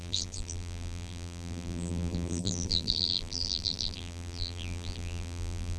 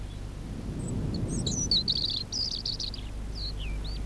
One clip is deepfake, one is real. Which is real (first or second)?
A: second